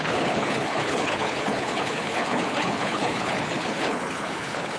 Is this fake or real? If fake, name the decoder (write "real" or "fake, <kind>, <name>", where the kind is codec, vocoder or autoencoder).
fake, codec, HILCodec